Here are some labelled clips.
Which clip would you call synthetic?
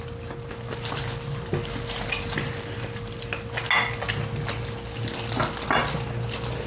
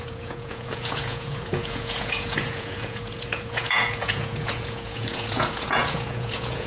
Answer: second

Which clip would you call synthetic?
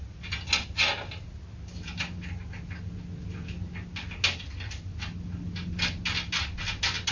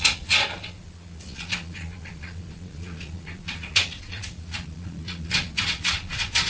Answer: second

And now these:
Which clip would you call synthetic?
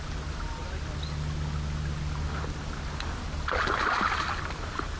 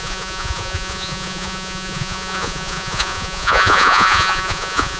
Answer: second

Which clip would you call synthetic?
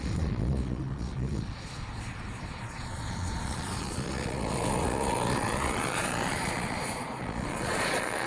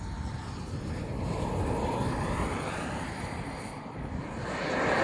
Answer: first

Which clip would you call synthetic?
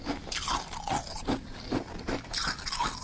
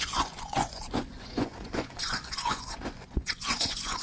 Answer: second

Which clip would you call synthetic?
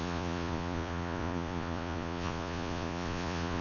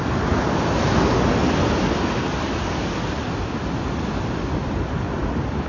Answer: first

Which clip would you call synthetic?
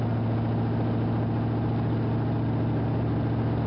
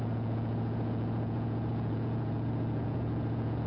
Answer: second